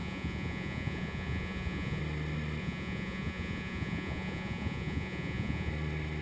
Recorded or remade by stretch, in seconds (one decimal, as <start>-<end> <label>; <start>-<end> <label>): 0.0-2.0 remade; 2.0-2.6 recorded; 2.6-5.7 remade; 5.7-6.2 recorded